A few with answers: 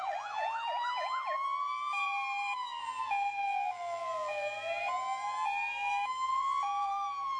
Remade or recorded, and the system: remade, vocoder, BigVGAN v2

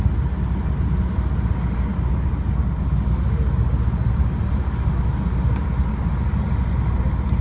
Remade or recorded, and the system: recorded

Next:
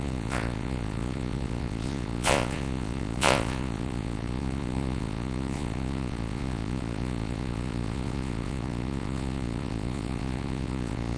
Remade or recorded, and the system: remade, vocoder, Vocos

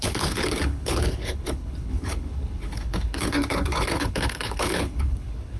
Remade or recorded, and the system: remade, codec, HILCodec